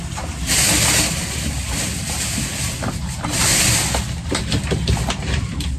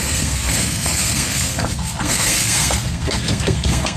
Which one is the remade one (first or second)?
second